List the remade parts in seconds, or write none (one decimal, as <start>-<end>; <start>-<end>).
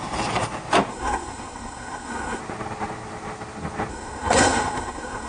0.9-2.4; 3.9-5.3